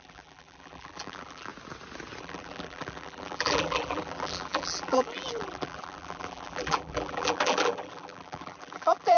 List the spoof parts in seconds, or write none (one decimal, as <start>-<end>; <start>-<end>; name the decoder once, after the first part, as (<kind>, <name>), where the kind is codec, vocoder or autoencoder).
0.0-1.5 (vocoder, BigVGAN v2); 2.2-9.2